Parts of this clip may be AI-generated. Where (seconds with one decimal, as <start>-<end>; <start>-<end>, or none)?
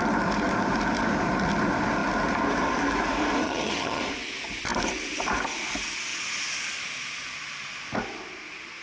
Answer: 3.4-4.0